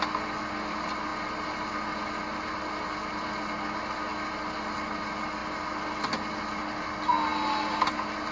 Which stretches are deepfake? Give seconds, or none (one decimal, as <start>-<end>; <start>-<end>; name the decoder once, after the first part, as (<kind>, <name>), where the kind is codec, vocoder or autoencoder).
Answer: none